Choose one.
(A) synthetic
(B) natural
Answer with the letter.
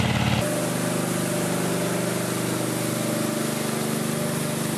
B